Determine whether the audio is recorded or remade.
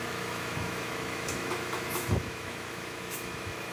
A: remade